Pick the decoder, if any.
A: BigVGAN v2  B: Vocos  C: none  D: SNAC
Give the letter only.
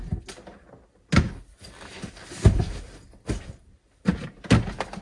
C